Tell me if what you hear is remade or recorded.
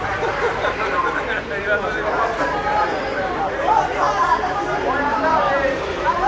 remade